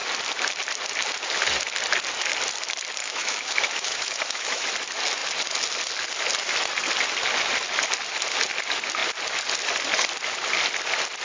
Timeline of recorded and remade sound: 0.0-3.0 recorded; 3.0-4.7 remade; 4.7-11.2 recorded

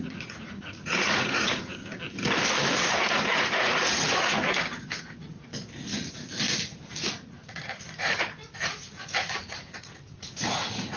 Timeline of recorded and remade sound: 0.0-1.8 remade; 1.8-2.8 recorded; 2.8-5.5 remade; 5.5-7.0 recorded; 7.0-11.0 remade

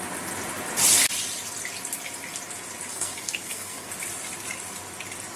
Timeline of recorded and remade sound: 0.0-2.9 recorded; 2.9-3.9 remade; 3.9-5.4 recorded

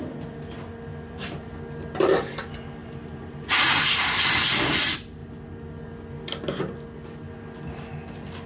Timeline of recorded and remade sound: 0.0-0.9 recorded; 0.9-1.5 remade; 1.5-2.8 recorded; 2.8-4.1 remade; 4.1-8.5 recorded

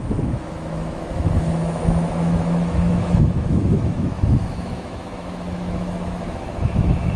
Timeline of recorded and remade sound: 0.0-7.2 remade

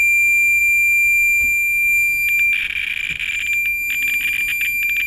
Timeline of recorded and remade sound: 0.0-5.1 recorded

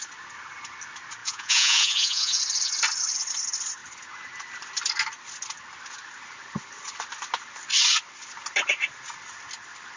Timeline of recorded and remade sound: 0.0-1.2 recorded; 1.2-2.4 remade; 2.4-10.0 recorded